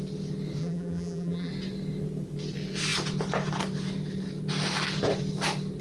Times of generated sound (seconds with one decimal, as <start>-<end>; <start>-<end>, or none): 0.6-1.5